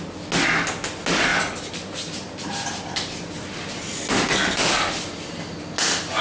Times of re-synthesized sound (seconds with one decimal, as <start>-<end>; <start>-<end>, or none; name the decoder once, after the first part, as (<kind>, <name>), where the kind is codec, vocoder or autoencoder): none